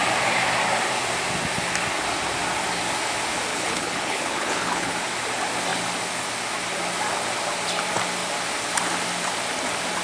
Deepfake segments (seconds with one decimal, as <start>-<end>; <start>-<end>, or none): 3.5-4.9